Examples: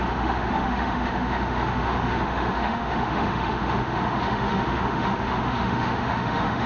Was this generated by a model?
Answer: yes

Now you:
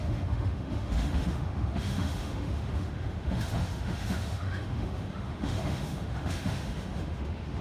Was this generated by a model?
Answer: yes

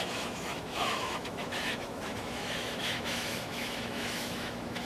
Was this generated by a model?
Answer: yes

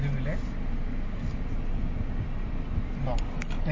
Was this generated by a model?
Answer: no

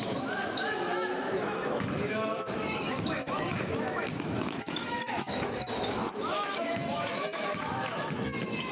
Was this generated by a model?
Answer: yes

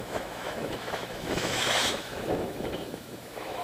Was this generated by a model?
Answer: yes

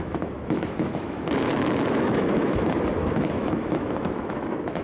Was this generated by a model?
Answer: yes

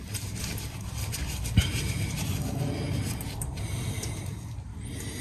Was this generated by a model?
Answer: no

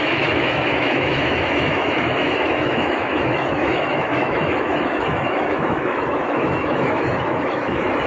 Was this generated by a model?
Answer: yes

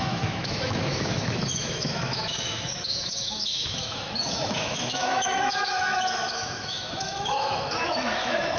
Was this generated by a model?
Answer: yes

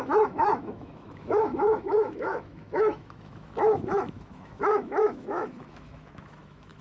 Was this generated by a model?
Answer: yes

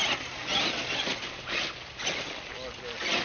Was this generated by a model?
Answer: no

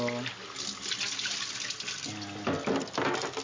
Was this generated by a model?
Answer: no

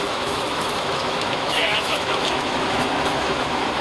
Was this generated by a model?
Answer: yes